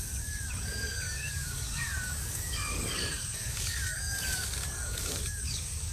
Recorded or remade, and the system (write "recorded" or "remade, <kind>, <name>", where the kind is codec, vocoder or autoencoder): remade, codec, DAC